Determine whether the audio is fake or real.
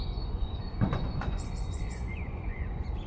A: fake